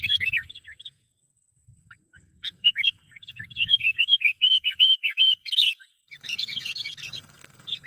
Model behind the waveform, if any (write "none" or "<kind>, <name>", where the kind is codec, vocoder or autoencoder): codec, SNAC